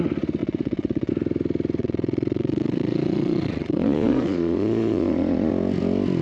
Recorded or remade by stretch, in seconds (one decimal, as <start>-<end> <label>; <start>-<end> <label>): 0.0-0.4 recorded; 0.4-1.1 remade; 1.1-1.8 recorded; 1.8-5.5 remade; 5.5-6.2 recorded